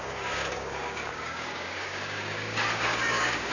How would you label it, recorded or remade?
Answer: remade